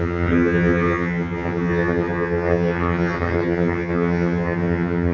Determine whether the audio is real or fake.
fake